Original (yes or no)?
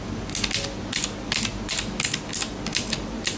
yes